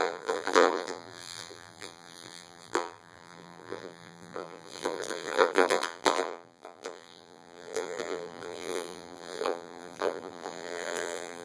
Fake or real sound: fake